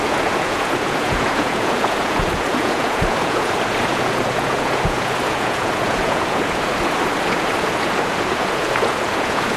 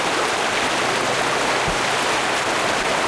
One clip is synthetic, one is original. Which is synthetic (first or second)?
first